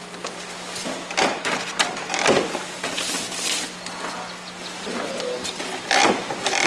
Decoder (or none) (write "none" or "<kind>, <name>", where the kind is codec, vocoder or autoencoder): none